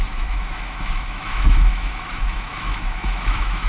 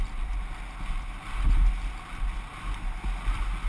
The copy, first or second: first